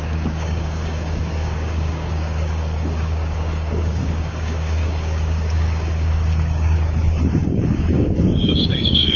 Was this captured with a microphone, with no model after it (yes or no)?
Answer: no